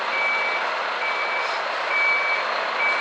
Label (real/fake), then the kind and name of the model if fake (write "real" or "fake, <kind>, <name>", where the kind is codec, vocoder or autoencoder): real